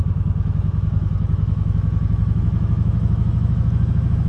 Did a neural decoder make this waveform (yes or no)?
yes